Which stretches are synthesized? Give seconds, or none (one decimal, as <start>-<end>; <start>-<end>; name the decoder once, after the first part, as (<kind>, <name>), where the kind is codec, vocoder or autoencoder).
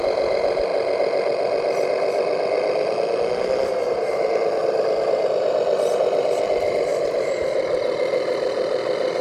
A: 0.0-0.7 (vocoder, BigVGAN v2); 5.9-9.2